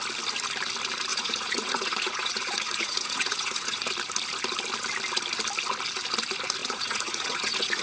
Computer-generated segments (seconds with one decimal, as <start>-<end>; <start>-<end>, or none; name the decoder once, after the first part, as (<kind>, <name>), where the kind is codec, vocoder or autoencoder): 1.1-3.9 (vocoder, Vocos); 6.6-7.8

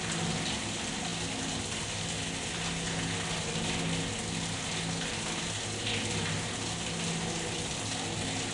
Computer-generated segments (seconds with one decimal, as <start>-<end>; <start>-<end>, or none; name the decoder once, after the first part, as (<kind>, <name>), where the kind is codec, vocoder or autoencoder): none

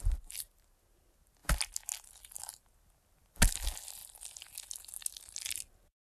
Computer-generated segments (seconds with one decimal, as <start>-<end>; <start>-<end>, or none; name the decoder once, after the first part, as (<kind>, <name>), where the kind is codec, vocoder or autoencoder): none

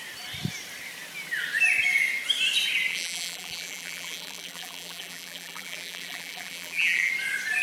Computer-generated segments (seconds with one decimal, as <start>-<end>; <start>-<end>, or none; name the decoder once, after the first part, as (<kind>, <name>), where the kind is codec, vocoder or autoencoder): 2.9-7.1 (vocoder, BigVGAN v2)

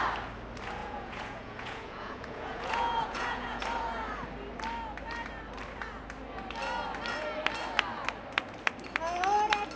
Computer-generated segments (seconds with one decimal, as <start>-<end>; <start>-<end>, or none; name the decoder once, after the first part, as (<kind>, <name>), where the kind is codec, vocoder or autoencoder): 0.8-3.6 (vocoder, Vocos)

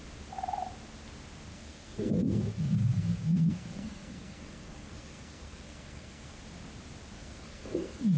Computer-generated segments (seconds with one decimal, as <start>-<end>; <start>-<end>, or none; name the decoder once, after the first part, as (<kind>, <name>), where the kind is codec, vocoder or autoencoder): 1.5-6.4 (codec, SNAC); 7.2-8.2

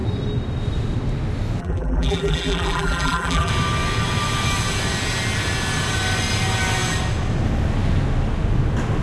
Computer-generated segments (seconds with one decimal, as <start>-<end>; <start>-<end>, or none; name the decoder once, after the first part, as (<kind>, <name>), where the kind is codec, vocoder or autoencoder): 1.6-3.5 (vocoder, BigVGAN v2)

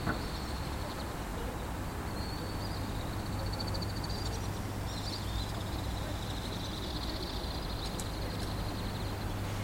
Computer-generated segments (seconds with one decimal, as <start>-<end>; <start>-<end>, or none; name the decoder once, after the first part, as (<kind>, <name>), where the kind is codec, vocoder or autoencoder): none